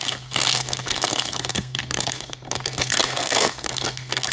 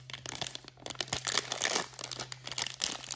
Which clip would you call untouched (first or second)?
second